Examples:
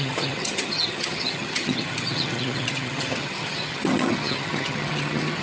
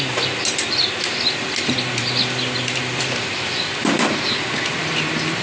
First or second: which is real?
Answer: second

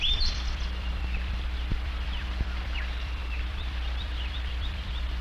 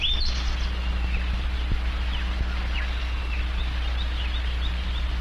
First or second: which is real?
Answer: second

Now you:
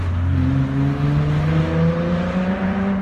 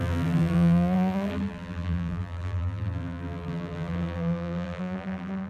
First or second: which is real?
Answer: first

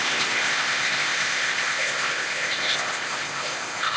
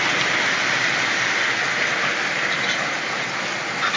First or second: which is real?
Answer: second